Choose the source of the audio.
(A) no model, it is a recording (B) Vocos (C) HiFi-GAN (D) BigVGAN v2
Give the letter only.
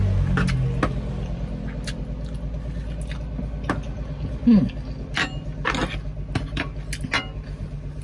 A